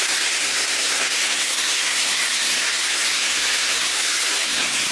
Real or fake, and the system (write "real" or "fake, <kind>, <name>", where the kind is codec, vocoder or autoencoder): fake, codec, SNAC